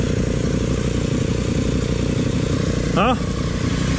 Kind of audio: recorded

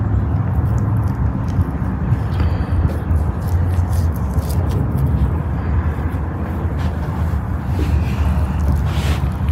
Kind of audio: recorded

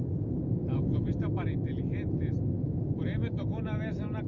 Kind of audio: recorded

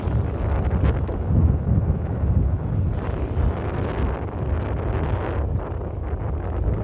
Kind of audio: recorded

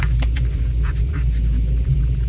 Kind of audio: recorded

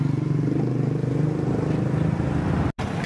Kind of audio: recorded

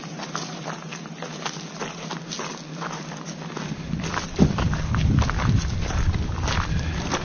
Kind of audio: recorded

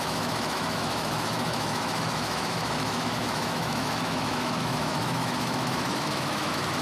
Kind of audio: remade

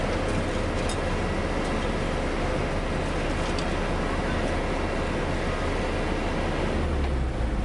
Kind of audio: recorded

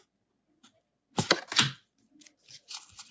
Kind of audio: recorded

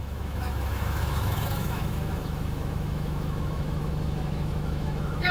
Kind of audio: remade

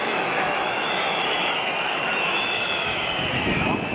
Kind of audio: remade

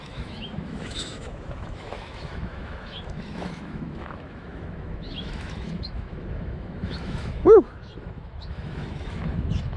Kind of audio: remade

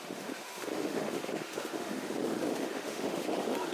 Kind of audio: remade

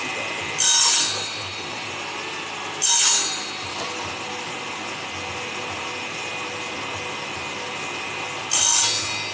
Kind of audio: recorded